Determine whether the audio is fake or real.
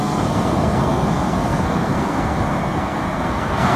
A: fake